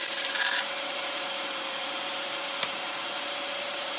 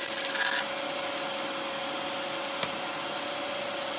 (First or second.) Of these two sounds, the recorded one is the second